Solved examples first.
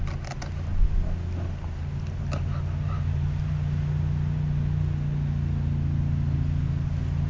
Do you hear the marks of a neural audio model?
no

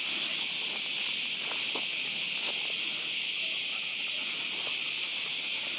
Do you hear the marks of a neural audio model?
no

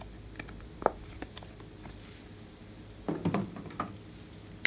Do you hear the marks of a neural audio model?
no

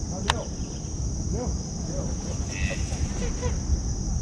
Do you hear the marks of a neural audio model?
no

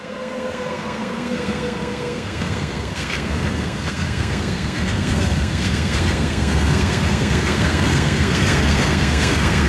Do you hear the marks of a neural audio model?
yes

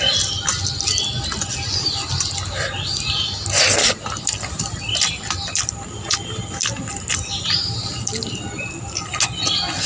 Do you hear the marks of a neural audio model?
no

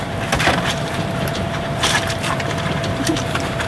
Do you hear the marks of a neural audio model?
yes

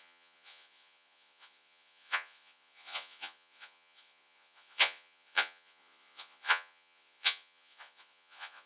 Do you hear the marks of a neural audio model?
yes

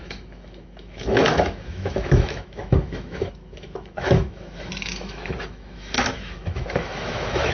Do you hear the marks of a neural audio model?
yes